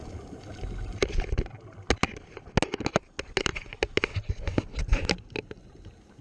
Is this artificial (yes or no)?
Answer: no